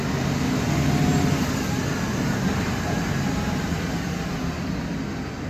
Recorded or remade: recorded